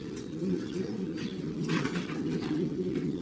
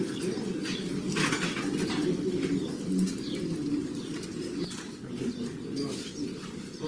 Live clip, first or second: second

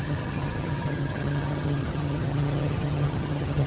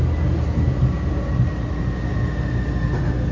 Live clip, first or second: second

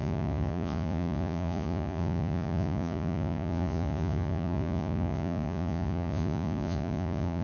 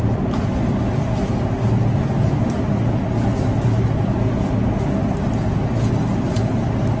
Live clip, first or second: second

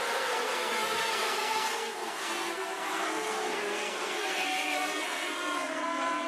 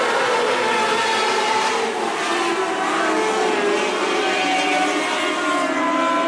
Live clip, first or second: second